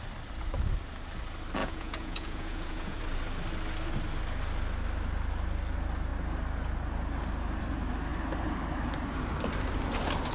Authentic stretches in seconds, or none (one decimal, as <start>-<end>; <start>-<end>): 0.0-1.6; 3.0-10.3